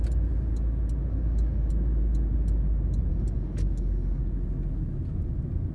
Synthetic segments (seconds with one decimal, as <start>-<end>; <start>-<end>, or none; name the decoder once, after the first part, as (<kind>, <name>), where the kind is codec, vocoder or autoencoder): 1.1-1.7 (codec, DAC); 3.1-4.2